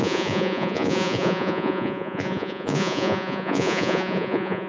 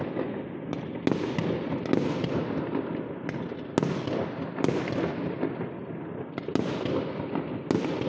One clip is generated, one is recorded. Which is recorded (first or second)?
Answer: second